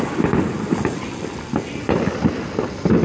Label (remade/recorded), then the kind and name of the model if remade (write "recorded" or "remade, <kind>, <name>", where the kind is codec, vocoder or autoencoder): recorded